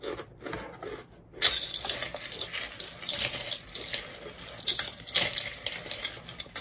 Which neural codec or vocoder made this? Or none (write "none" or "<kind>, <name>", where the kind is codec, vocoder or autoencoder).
none